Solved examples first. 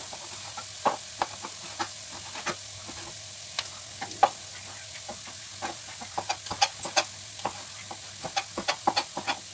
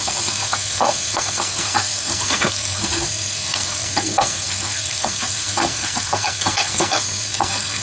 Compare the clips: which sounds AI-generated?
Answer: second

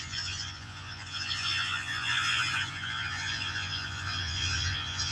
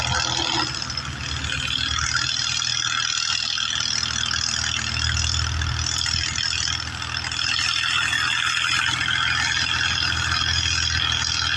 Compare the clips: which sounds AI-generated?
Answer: first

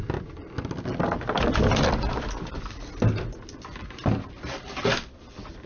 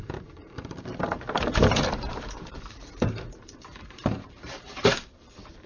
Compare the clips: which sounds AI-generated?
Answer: second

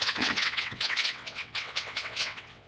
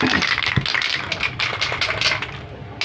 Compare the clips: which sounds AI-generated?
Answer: first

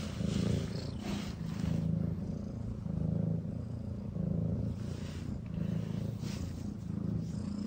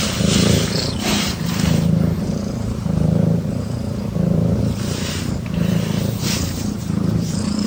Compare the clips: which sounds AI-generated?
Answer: second